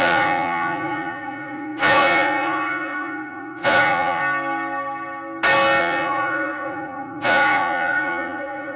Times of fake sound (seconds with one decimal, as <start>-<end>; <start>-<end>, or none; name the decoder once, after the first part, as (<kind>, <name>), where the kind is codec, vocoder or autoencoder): 0.0-4.2 (vocoder, Vocos); 5.8-8.8